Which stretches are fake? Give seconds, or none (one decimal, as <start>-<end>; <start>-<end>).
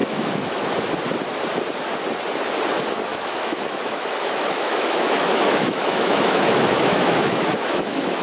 0.0-0.6; 3.1-8.2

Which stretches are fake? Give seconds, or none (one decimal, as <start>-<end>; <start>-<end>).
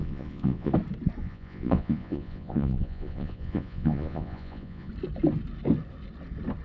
0.0-0.7; 1.2-4.9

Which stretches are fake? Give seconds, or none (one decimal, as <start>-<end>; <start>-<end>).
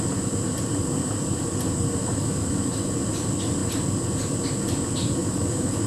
2.0-2.9; 5.2-5.9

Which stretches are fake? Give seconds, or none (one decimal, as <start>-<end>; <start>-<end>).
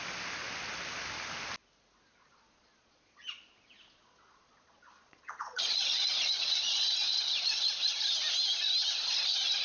2.2-7.3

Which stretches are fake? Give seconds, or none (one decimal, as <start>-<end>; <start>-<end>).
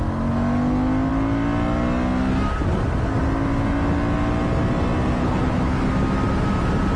5.2-5.8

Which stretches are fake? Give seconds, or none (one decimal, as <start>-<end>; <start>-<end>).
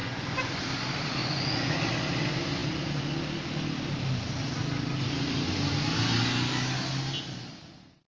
0.0-0.6; 1.2-1.8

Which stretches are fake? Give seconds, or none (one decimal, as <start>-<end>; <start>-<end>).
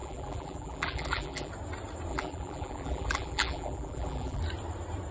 0.0-1.5; 2.1-4.4